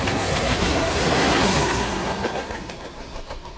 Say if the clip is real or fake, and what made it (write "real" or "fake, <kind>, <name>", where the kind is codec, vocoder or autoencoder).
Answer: fake, codec, SNAC